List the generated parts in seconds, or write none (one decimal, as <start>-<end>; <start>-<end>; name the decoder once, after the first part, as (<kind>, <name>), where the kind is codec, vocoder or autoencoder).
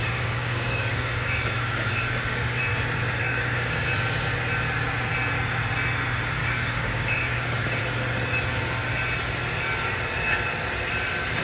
0.0-2.6 (codec, DAC); 3.2-3.9; 6.4-7.8